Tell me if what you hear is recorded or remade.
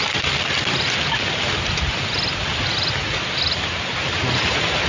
recorded